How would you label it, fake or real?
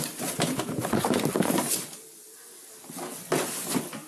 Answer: real